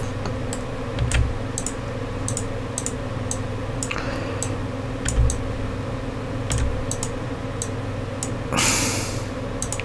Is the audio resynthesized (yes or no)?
no